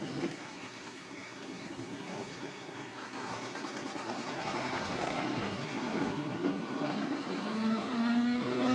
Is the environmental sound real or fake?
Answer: fake